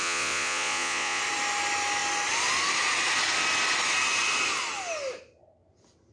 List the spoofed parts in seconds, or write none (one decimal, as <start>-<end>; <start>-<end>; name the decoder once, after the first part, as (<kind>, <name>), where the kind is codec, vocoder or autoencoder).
0.0-1.2 (vocoder, Vocos)